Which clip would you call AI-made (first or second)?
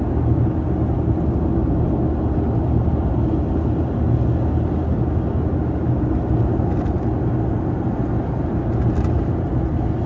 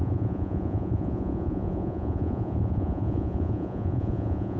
second